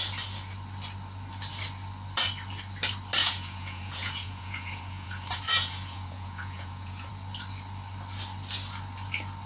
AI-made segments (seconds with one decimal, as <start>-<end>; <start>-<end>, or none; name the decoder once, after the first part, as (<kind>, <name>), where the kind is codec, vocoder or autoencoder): 3.2-7.1 (vocoder, Vocos)